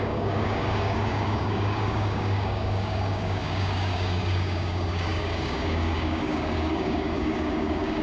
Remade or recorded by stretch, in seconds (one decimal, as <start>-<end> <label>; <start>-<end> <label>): 0.0-8.0 remade